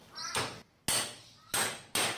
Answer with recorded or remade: recorded